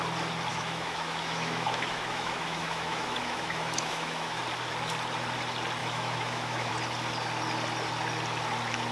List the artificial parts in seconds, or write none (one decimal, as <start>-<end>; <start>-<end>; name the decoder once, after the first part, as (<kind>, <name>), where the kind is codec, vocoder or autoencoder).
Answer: 0.5-4.4 (autoencoder, DAC-VAE); 5.8-6.7